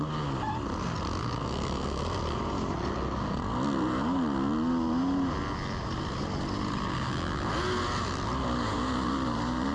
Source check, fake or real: real